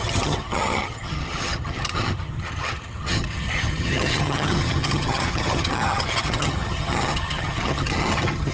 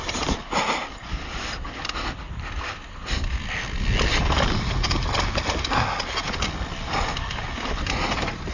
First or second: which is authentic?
second